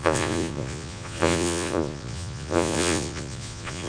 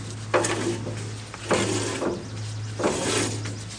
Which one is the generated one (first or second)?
first